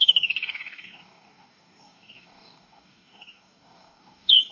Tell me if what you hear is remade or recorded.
remade